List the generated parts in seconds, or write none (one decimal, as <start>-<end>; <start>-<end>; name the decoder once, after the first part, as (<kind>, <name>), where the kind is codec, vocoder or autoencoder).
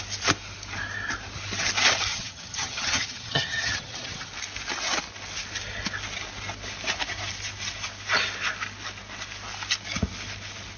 2.1-4.3 (vocoder, HiFi-GAN)